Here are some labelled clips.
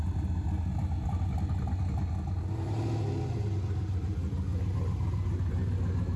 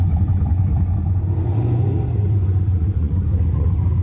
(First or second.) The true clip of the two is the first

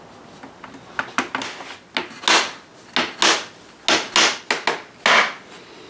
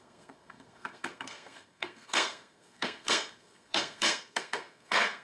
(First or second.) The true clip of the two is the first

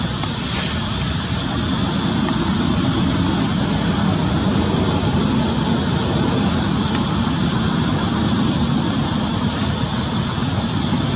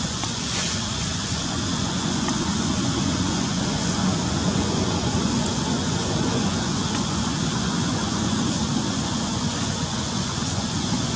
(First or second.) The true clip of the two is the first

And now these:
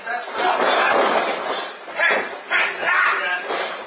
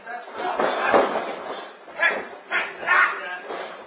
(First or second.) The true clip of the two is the second